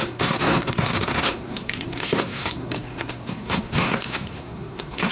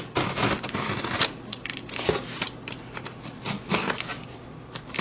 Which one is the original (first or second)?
second